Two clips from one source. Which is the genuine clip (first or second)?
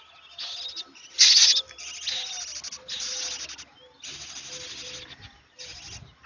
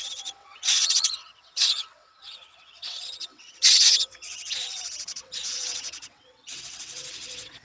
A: first